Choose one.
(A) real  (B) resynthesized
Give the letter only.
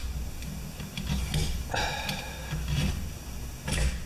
A